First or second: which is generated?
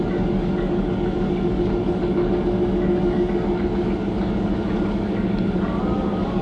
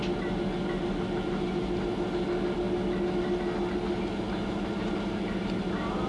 first